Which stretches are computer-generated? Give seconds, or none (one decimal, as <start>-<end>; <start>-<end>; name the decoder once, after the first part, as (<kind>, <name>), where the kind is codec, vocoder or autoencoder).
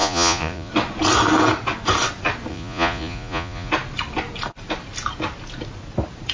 0.0-0.7 (vocoder, Vocos); 2.5-3.7